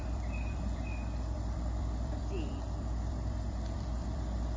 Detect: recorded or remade remade